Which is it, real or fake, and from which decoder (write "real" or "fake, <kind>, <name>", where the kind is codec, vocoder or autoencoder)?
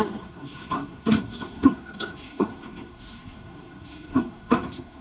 fake, codec, SNAC